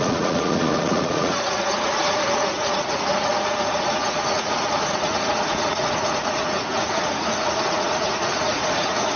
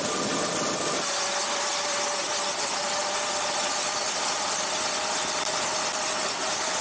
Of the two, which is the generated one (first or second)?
first